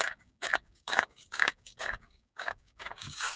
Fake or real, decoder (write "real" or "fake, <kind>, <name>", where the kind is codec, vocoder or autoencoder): fake, codec, DAC